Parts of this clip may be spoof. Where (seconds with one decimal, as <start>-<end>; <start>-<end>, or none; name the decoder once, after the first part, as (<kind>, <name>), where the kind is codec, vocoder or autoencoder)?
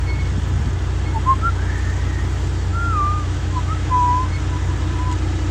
2.7-4.3 (autoencoder, DAC-VAE)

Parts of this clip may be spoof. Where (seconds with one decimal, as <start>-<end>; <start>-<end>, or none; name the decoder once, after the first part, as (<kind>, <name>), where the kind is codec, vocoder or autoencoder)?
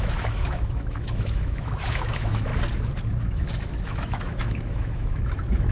0.0-2.5 (autoencoder, DAC-VAE); 3.2-5.7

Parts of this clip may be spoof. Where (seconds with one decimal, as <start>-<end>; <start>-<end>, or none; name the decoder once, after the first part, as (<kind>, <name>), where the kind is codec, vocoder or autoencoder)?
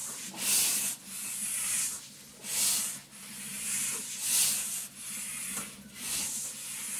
none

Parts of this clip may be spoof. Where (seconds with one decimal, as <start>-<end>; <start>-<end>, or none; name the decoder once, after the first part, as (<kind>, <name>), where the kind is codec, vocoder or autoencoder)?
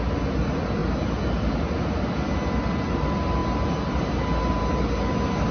none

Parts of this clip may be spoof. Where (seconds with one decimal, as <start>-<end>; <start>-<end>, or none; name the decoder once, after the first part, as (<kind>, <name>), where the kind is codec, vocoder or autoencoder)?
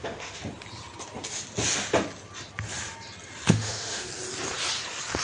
0.0-0.4 (autoencoder, DAC-VAE); 3.5-4.1